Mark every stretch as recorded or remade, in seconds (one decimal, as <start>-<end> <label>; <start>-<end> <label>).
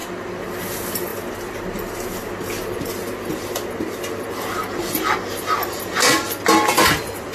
0.0-7.3 recorded